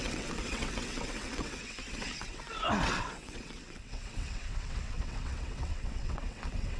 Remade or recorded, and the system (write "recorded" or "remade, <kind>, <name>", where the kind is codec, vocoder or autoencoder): remade, vocoder, WaveNeXt